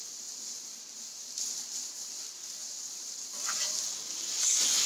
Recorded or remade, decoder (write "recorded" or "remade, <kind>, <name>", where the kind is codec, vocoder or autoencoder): recorded